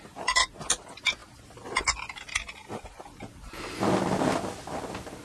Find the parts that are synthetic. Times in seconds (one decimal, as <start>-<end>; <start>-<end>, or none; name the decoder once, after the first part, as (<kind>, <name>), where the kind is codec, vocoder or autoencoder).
none

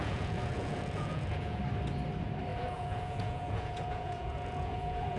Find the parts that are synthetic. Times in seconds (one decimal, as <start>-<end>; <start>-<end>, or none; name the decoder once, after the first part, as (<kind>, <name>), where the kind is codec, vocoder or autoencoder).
0.0-1.6 (vocoder, Vocos); 2.5-5.2

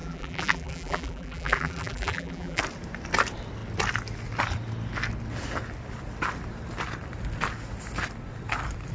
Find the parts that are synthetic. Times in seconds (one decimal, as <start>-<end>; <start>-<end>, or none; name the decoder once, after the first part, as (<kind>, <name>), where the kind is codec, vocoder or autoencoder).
0.0-2.6 (vocoder, BigVGAN v2)

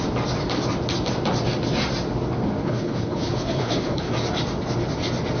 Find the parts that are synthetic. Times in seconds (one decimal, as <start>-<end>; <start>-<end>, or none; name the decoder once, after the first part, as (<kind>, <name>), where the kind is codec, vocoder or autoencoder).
2.6-4.1 (codec, HILCodec)